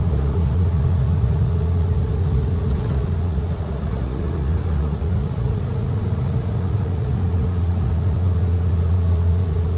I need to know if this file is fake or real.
fake